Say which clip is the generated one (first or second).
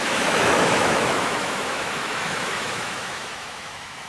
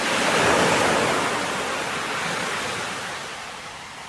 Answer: first